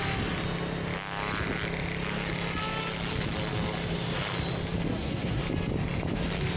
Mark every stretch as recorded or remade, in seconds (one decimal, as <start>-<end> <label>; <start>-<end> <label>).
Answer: 0.0-4.9 recorded; 4.9-5.4 remade; 5.4-6.6 recorded